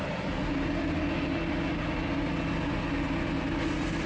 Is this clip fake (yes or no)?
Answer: no